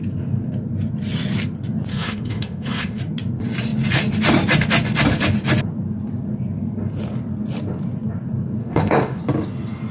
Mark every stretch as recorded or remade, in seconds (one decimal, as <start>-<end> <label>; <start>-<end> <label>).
0.0-1.9 recorded; 1.9-3.0 remade; 3.0-8.6 recorded; 8.6-9.2 remade; 9.2-9.9 recorded